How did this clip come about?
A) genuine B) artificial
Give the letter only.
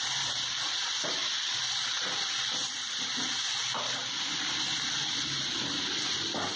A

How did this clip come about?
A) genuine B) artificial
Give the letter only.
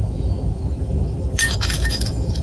B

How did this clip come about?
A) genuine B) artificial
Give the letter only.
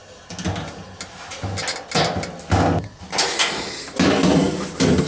A